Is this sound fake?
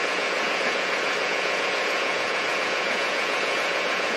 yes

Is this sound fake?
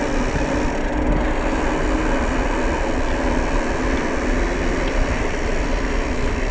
no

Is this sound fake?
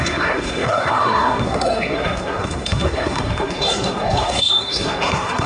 yes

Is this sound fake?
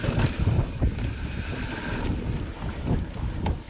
no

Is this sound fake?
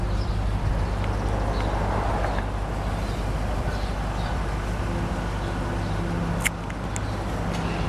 no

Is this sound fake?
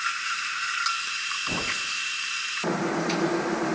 yes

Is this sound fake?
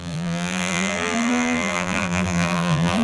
yes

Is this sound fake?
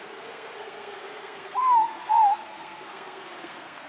yes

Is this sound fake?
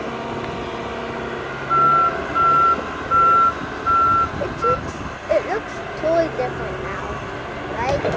no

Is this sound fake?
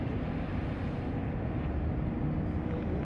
no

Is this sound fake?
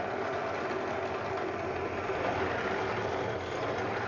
no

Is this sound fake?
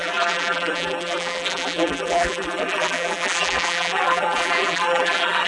yes